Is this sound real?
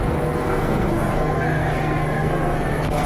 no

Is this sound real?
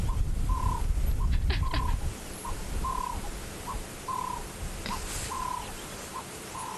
no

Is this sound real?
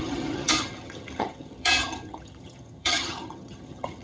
no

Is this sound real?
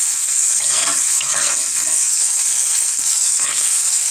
no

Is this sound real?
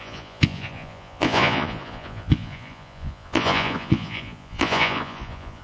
no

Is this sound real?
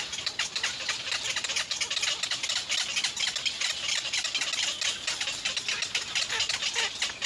yes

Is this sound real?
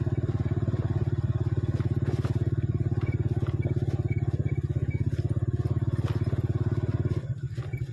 yes